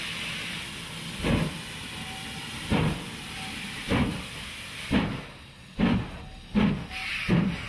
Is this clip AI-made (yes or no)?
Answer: no